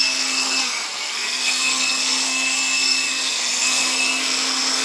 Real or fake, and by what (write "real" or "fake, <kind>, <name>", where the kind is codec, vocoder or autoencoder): fake, codec, SNAC